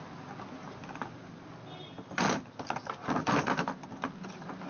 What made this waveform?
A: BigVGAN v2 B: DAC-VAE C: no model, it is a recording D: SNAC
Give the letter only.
C